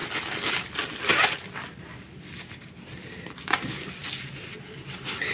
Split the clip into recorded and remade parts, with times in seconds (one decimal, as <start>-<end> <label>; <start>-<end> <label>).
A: 0.0-5.3 recorded